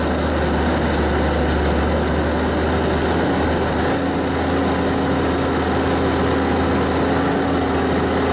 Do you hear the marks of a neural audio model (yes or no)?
no